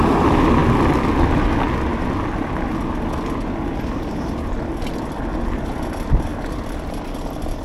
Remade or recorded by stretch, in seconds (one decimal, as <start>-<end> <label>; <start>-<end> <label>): 0.0-7.6 recorded